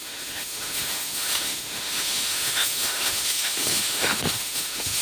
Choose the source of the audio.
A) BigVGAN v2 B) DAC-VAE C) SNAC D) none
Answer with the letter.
B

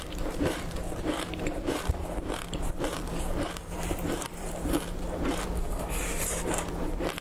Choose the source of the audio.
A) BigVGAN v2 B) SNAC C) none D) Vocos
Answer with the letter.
A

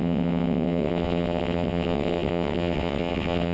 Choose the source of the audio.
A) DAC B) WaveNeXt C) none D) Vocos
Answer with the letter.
B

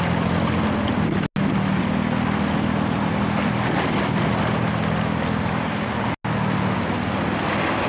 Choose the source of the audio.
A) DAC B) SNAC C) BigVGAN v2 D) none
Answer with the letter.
D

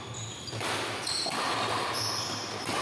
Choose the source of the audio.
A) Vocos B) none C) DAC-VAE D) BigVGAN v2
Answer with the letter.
B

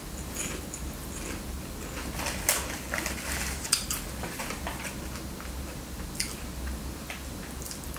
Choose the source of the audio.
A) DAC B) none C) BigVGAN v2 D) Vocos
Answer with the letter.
B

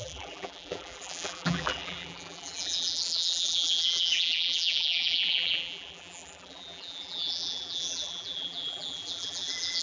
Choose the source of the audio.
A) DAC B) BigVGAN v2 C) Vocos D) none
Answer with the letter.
B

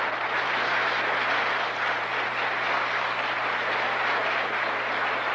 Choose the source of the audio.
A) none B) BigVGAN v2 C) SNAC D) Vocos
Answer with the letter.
A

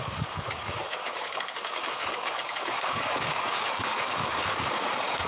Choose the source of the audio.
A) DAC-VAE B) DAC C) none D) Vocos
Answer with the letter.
B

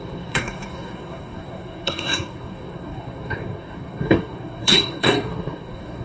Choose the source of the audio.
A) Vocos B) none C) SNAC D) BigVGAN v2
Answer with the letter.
C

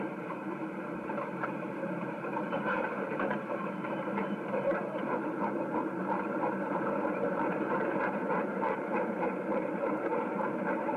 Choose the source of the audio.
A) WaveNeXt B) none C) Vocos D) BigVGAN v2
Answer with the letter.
D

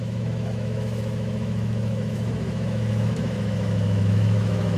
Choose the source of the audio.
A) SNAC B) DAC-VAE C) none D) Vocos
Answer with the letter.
B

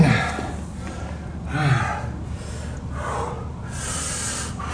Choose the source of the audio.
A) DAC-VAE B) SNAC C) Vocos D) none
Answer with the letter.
D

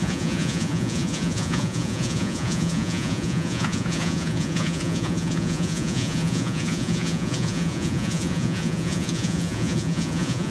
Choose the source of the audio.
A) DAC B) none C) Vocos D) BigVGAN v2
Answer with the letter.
C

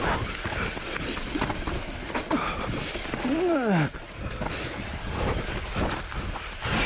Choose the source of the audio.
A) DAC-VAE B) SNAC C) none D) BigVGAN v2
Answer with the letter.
C